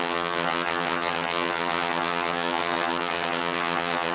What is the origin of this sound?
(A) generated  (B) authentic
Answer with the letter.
A